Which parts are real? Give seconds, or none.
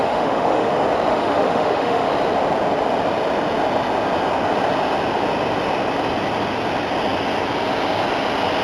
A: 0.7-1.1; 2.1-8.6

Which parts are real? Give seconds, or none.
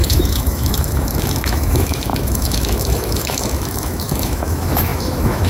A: none